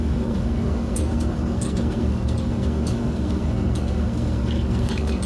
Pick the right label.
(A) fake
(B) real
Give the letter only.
A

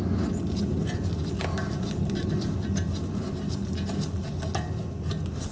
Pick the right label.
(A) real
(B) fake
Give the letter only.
A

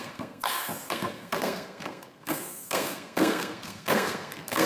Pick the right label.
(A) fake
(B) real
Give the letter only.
A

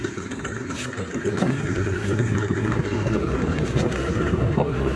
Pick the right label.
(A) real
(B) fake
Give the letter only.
B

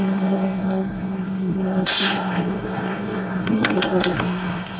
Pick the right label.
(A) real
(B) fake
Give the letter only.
B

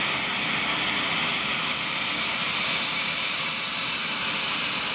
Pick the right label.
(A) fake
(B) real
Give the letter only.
B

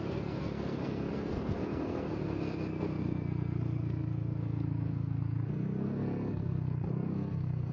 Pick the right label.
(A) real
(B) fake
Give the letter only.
B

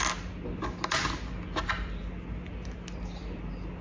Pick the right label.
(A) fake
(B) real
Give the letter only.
B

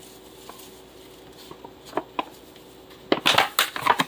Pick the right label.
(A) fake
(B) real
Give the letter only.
B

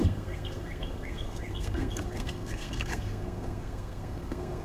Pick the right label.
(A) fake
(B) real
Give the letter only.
A